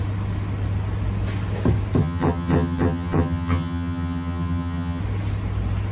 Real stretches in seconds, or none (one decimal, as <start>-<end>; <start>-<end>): 0.0-2.0; 5.0-5.9